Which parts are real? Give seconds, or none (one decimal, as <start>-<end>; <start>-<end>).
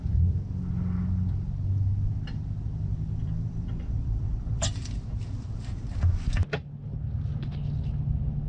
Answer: 0.0-2.9; 4.9-8.5